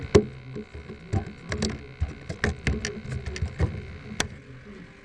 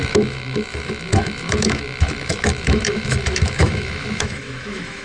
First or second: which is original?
first